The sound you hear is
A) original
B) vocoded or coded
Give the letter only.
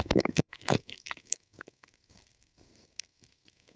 B